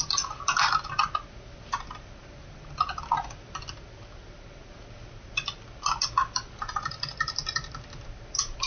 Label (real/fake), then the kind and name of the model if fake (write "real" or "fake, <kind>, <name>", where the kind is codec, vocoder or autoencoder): real